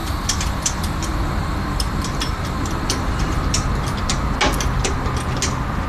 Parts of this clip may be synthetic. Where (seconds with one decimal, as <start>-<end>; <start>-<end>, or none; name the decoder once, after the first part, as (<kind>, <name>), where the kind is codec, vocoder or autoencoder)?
0.0-3.5 (vocoder, BigVGAN v2)